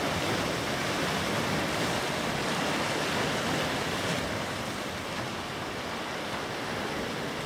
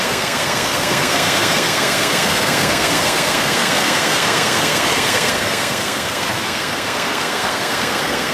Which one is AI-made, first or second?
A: second